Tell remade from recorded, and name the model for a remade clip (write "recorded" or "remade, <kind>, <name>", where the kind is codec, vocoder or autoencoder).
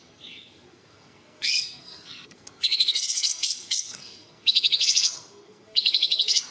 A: remade, codec, SNAC